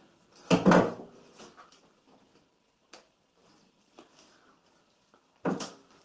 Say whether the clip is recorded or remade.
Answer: recorded